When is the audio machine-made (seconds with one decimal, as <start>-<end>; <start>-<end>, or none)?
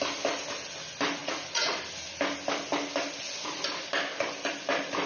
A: 1.2-1.8